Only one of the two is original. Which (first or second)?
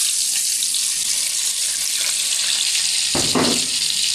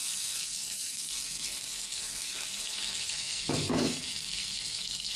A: first